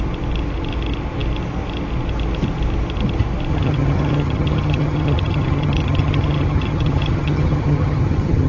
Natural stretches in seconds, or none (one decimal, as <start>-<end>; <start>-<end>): 0.0-3.5